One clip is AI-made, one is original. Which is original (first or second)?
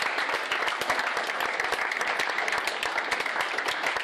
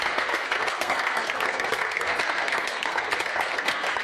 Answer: first